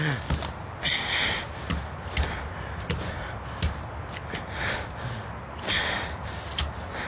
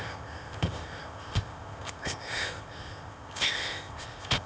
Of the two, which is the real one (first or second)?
first